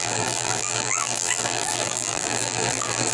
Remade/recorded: remade